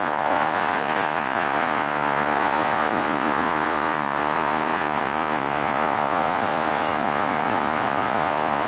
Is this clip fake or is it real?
fake